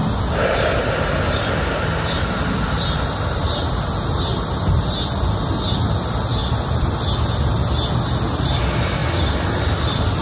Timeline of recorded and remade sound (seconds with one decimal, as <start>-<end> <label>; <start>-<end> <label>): 0.0-10.2 recorded